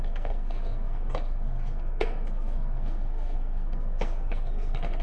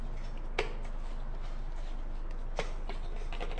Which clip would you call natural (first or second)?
second